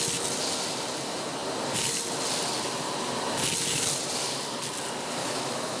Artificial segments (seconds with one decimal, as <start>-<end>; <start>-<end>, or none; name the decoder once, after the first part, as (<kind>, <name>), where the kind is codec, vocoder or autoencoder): 5.2-5.8 (autoencoder, DAC-VAE)